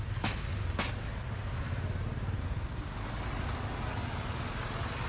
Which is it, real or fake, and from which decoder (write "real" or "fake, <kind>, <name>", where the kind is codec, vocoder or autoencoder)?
real